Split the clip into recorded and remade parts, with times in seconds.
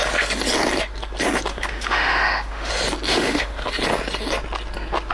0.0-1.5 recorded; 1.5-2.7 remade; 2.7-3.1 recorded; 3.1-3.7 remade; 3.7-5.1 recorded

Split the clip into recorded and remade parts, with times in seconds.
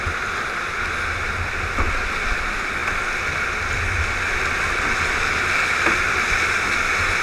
0.0-7.2 recorded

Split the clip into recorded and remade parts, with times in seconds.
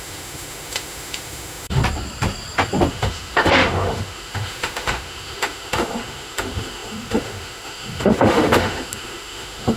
0.0-1.8 remade; 1.8-2.9 recorded; 2.9-9.8 remade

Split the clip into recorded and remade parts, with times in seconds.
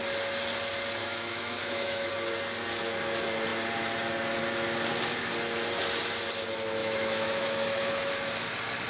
0.0-1.0 recorded; 1.0-2.1 remade; 2.1-6.8 recorded; 6.8-8.1 remade; 8.1-8.9 recorded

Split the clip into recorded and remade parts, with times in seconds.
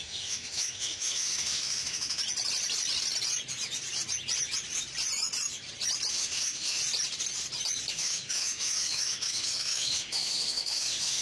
0.0-2.2 remade; 2.2-6.1 recorded; 6.1-6.8 remade; 6.8-7.9 recorded; 7.9-11.2 remade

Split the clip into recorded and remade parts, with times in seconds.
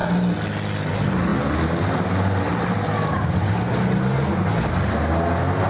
0.0-5.7 recorded